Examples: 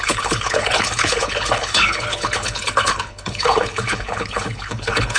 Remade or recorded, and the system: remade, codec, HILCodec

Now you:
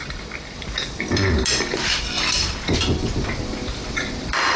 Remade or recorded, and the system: remade, vocoder, BigVGAN v2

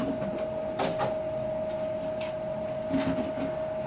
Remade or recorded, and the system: recorded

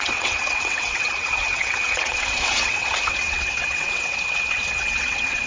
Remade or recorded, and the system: remade, vocoder, WaveNeXt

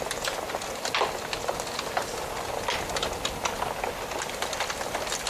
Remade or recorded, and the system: recorded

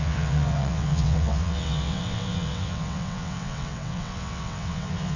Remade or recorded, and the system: remade, vocoder, WaveNeXt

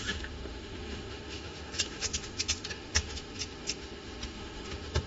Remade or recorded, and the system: remade, autoencoder, DAC-VAE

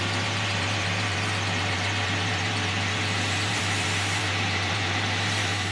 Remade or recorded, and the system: remade, vocoder, BigVGAN v2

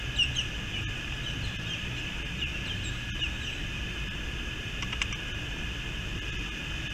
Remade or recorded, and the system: recorded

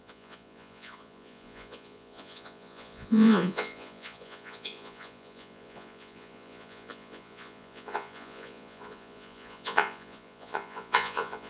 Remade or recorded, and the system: remade, vocoder, Vocos